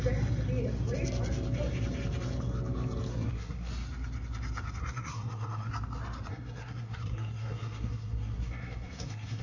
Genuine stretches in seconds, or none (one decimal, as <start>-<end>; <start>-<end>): 0.0-3.1; 3.7-4.8; 5.7-6.3

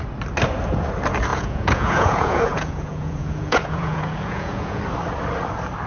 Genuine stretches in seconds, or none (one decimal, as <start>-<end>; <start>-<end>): 0.0-1.3; 4.8-5.9

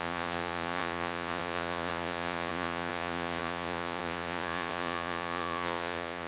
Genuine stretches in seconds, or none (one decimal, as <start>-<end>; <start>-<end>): none

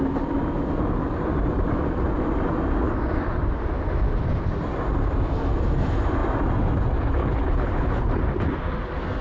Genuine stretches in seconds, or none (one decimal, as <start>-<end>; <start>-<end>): 0.0-7.2; 8.1-9.2

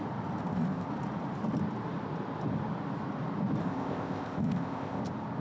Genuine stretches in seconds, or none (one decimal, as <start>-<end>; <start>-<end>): 0.0-0.4; 0.9-3.6; 5.0-5.4

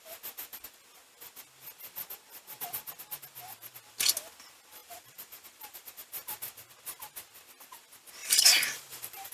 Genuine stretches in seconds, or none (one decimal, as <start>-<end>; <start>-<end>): 0.0-4.8; 6.1-8.2